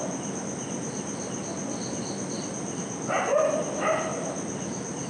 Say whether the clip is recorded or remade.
recorded